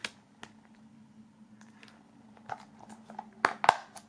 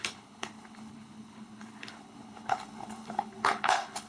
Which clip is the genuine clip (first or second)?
first